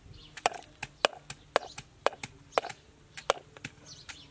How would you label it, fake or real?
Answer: real